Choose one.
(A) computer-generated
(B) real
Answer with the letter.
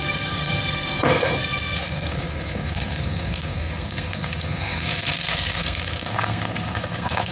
A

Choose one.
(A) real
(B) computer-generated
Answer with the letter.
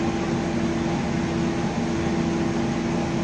A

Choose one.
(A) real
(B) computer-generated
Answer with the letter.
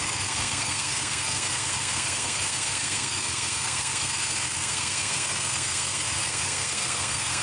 B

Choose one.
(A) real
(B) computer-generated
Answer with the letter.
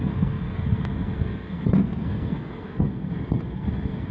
B